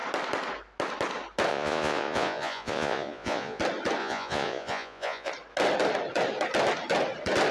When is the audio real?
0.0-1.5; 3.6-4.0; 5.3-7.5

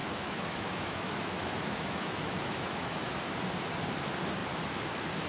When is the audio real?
3.2-5.3

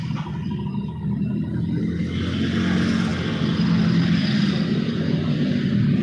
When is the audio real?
0.0-6.0